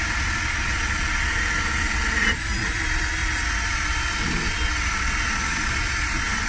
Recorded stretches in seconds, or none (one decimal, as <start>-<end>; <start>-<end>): 0.0-6.5